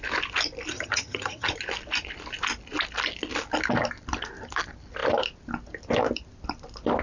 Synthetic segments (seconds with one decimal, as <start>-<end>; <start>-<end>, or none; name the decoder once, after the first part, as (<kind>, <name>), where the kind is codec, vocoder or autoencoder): 0.7-1.5 (vocoder, HiFi-GAN)